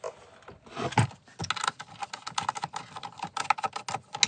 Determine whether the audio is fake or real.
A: real